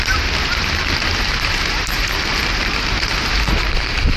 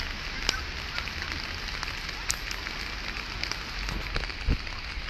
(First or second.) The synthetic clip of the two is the first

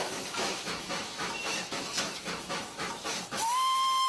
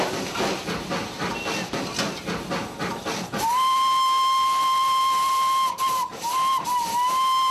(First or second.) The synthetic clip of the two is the first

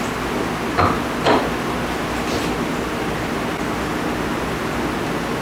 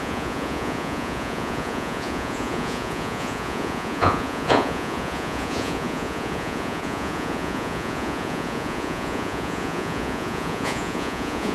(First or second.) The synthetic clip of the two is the second